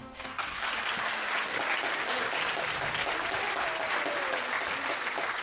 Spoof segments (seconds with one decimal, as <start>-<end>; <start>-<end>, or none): 0.0-0.6